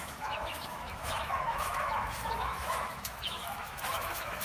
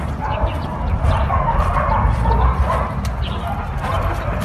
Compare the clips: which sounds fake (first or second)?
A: first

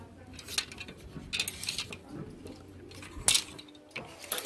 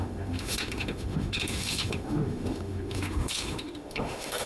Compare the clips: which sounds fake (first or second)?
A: second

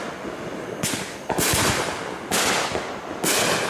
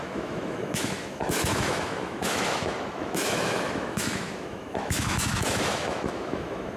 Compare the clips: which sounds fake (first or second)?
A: second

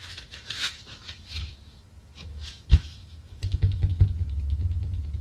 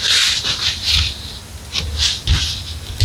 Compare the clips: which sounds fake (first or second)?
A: first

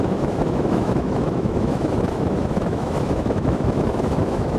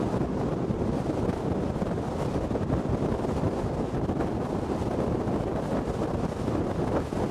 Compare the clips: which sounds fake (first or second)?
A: first